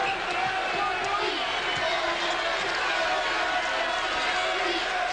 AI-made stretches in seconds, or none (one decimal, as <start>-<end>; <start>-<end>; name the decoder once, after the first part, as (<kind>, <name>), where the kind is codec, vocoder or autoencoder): none